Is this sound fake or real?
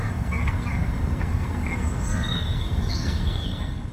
fake